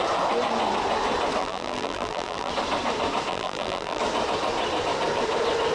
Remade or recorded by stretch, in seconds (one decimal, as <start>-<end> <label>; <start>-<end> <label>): 0.0-1.4 recorded; 1.4-2.5 remade; 2.5-3.3 recorded; 3.3-4.0 remade; 4.0-5.7 recorded